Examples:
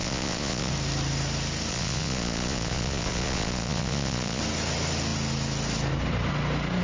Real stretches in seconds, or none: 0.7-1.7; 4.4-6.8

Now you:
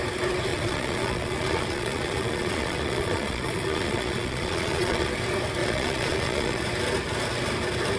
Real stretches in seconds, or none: 0.0-0.5; 5.1-5.6; 6.6-8.0

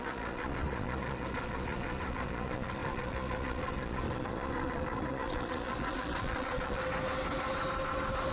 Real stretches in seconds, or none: 6.8-8.3

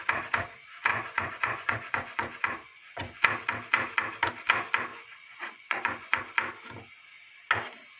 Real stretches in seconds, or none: 0.0-0.9; 3.2-4.9; 6.2-8.0

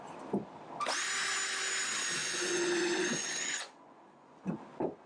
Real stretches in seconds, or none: 0.0-2.2; 4.6-5.1

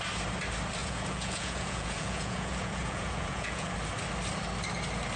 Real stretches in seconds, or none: 0.0-0.8; 3.7-5.2

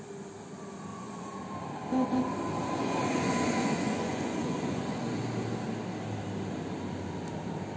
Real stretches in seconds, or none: 0.0-0.9; 1.4-2.6; 5.2-7.8